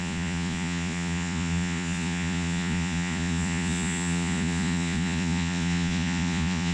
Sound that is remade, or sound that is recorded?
remade